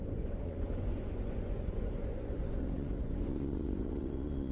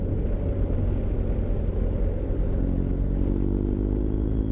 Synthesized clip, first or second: first